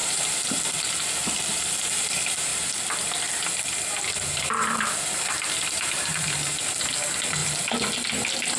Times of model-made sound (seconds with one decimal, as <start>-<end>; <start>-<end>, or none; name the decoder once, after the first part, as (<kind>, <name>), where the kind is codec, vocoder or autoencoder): none